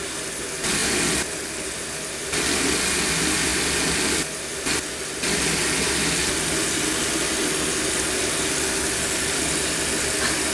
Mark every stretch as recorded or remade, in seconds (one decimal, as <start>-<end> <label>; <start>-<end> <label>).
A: 0.0-10.5 recorded